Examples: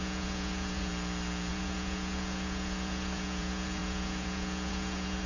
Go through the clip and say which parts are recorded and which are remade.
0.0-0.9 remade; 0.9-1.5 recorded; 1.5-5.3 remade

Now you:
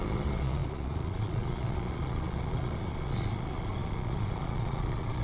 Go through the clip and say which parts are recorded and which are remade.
0.0-5.2 remade

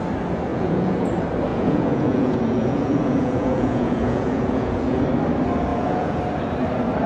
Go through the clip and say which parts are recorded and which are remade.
0.0-0.5 recorded; 0.5-1.1 remade; 1.1-1.5 recorded; 1.5-5.0 remade; 5.0-5.7 recorded; 5.7-6.2 remade; 6.2-7.1 recorded

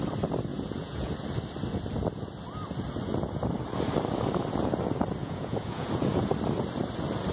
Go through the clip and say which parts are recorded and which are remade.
0.0-0.5 recorded; 0.5-1.1 remade; 1.1-5.2 recorded; 5.2-6.3 remade; 6.3-7.3 recorded

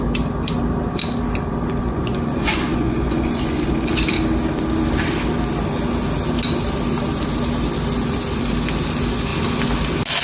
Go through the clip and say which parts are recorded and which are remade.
0.0-1.8 recorded; 1.8-3.9 remade; 3.9-10.2 recorded

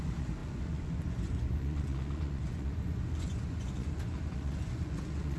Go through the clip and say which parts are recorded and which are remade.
0.0-5.4 remade

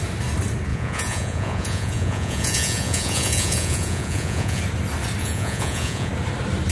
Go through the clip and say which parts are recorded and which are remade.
0.0-0.7 recorded; 0.7-4.6 remade; 4.6-5.2 recorded; 5.2-6.1 remade; 6.1-6.7 recorded